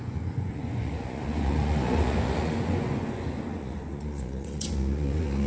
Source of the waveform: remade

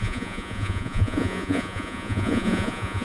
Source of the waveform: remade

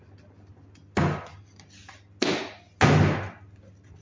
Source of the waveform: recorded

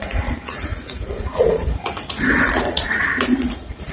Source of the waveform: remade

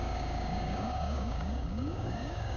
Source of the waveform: remade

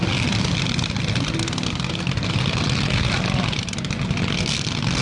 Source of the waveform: recorded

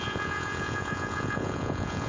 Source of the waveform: remade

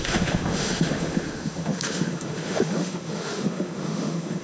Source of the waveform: remade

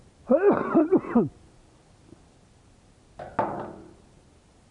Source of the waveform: recorded